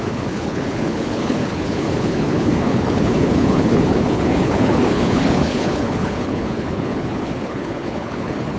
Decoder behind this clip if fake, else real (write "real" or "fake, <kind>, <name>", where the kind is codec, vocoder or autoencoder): fake, codec, HILCodec